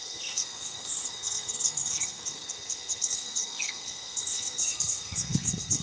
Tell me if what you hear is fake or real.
fake